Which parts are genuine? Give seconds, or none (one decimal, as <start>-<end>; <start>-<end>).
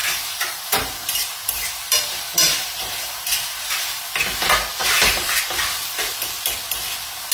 4.0-4.8; 5.4-7.3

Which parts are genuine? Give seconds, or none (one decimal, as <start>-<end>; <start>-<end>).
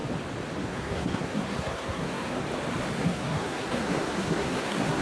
0.0-0.6; 2.4-2.9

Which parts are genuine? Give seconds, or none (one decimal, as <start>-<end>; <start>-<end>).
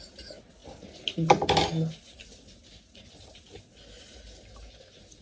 0.0-5.2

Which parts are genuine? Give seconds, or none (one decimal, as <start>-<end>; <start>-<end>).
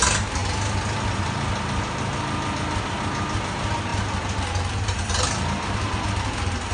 0.0-6.7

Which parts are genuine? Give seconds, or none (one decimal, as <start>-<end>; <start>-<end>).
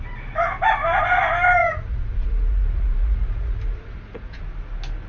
0.0-1.6; 4.4-5.1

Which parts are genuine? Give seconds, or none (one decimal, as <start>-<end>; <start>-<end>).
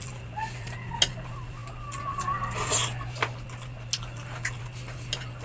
0.0-5.4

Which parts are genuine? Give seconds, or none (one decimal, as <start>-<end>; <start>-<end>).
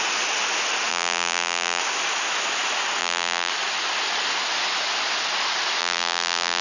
0.0-0.9; 1.8-3.0; 3.5-5.8